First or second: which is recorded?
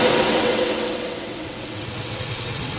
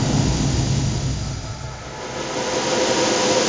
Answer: second